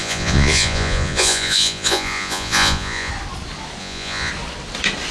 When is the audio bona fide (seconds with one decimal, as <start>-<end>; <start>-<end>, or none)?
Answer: 3.1-3.8; 4.3-5.1